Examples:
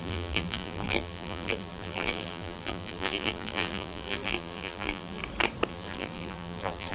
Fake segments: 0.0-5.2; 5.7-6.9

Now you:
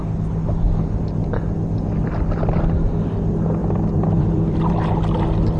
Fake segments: 3.6-4.7

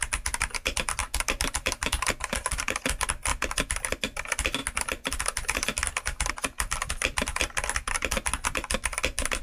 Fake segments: 1.0-2.8

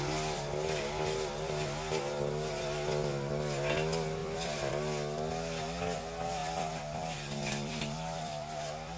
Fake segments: 4.2-4.7; 6.4-9.0

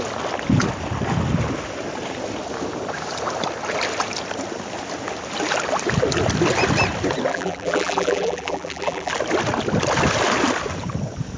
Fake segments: 7.3-9.1